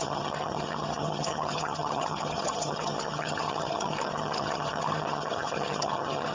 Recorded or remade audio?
remade